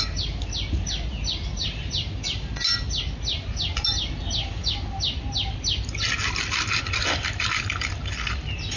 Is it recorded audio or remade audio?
recorded